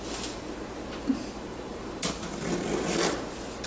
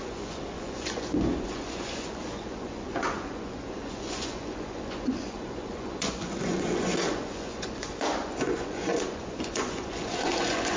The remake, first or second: second